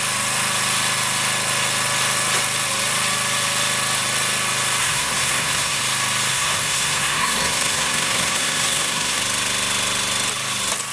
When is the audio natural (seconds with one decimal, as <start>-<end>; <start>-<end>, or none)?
0.0-4.8; 5.8-6.3; 9.2-10.9